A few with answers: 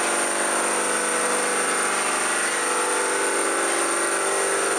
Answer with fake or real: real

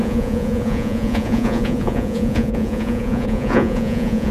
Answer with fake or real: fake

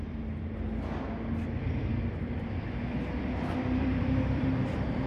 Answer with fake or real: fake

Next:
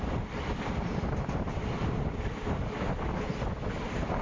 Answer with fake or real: real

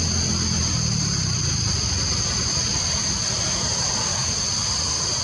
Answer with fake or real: real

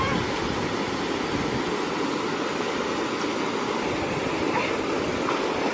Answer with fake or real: real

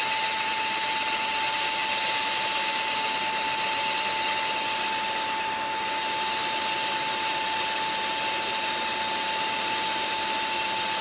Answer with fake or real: real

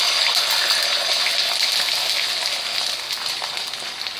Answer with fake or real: real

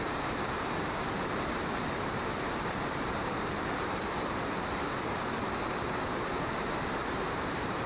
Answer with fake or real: fake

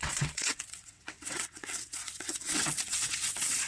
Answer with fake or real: fake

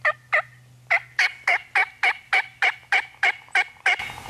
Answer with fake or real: real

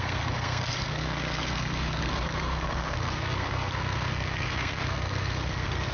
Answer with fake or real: fake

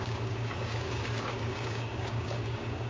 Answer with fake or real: fake